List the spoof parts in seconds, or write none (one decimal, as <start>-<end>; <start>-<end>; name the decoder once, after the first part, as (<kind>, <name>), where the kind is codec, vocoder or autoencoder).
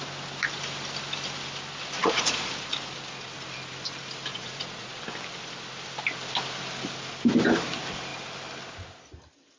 2.0-2.5 (vocoder, Vocos); 4.3-5.0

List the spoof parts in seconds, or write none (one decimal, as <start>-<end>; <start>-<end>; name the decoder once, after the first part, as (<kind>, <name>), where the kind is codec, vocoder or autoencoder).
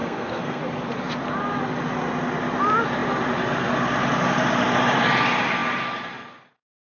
0.0-0.6 (codec, SNAC)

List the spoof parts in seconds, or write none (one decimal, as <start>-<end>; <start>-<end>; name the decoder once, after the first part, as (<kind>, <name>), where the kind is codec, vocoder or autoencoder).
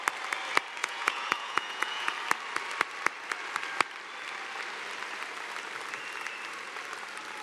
0.8-2.1 (vocoder, Vocos)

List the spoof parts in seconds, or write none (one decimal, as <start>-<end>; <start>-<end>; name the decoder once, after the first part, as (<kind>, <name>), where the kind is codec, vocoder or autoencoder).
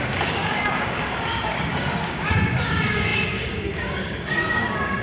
0.0-5.0 (codec, DAC)